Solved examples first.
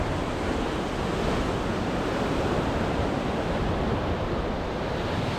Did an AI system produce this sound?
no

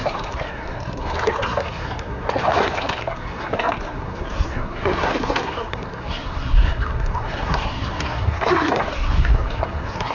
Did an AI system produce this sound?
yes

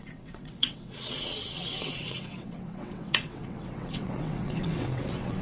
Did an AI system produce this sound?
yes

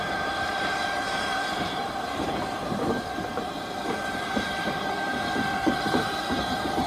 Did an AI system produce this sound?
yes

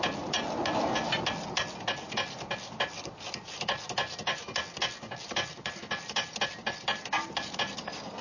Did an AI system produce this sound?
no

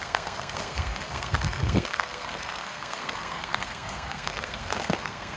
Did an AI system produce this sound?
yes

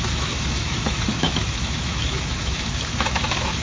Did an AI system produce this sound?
yes